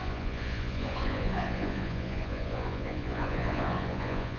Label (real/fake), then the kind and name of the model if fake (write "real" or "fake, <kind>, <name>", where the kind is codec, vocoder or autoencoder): fake, vocoder, Vocos